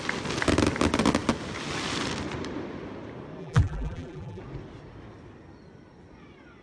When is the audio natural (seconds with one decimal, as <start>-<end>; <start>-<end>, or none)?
0.0-3.4; 4.4-6.6